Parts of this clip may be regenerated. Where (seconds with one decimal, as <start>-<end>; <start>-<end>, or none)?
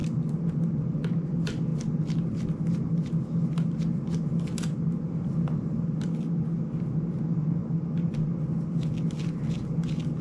none